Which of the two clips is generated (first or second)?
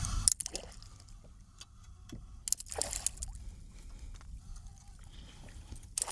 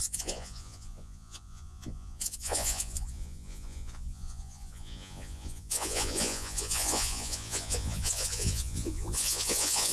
second